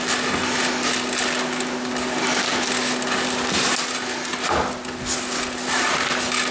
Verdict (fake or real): real